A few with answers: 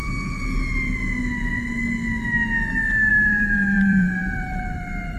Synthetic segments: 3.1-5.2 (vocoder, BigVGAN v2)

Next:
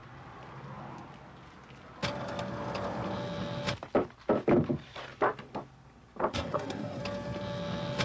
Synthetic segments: 6.3-7.0 (codec, SNAC)

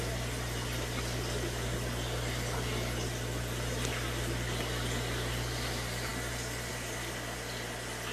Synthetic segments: none

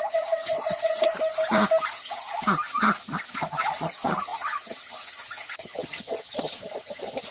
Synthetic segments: 0.0-1.1 (vocoder, HiFi-GAN); 1.9-7.3

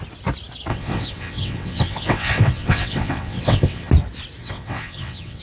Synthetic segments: 0.7-3.9 (vocoder, WaveNeXt); 4.4-5.4